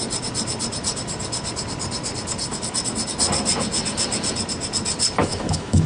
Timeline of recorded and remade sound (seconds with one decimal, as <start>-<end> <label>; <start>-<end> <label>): 0.0-5.2 recorded; 5.2-5.9 remade

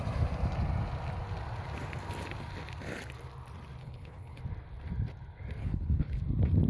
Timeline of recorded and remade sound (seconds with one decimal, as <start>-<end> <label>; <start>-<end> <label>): 0.0-3.8 recorded; 3.8-4.4 remade; 4.4-5.6 recorded; 5.6-6.2 remade; 6.2-6.7 recorded

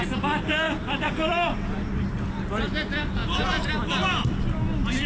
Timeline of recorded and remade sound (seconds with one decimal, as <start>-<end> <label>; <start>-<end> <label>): 0.0-0.5 recorded; 0.5-2.1 remade; 2.1-5.1 recorded

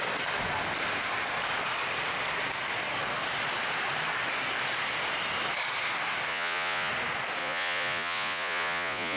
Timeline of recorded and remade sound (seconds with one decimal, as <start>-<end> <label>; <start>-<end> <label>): 0.0-6.3 recorded; 6.3-6.9 remade; 6.9-7.4 recorded; 7.4-9.2 remade

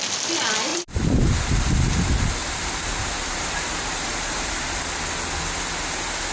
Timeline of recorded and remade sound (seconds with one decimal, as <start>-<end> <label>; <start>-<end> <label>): 0.0-0.7 recorded; 0.7-2.0 remade; 2.0-2.4 recorded; 2.4-4.8 remade; 4.8-6.3 recorded

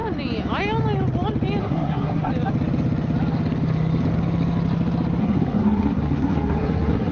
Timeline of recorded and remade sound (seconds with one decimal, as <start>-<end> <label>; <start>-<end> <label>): 0.0-1.6 recorded; 1.6-2.3 remade; 2.3-5.2 recorded; 5.2-7.1 remade

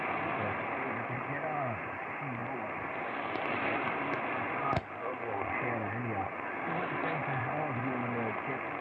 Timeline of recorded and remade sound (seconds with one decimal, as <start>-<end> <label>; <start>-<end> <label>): 0.0-8.8 recorded

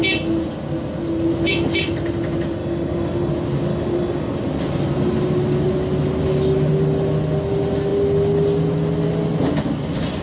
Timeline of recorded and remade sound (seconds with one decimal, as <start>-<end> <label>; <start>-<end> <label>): 0.0-2.6 recorded; 2.6-3.3 remade; 3.3-3.7 recorded; 3.7-4.3 remade; 4.3-10.2 recorded